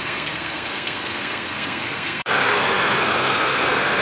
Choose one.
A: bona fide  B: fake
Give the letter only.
B